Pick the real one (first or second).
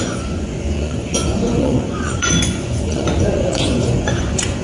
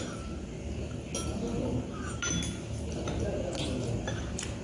second